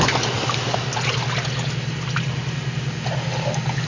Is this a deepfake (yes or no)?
no